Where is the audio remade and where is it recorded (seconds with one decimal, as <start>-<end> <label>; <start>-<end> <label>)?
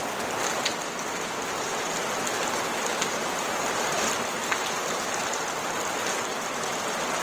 0.0-7.2 recorded